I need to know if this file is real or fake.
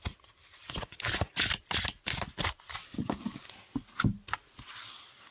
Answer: real